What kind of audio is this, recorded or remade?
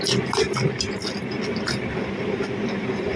recorded